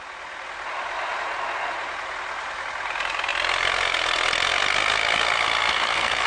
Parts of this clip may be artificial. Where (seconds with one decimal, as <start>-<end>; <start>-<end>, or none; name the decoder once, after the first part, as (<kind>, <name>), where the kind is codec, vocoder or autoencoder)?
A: 5.7-6.3 (codec, SNAC)